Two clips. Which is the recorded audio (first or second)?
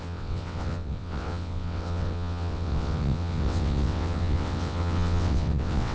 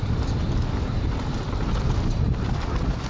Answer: second